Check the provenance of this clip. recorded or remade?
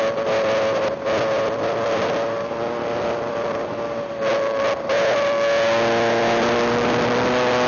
recorded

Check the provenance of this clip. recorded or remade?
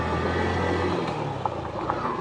recorded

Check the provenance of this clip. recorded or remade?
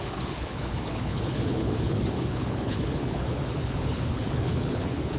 remade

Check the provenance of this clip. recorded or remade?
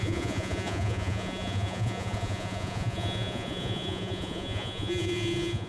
remade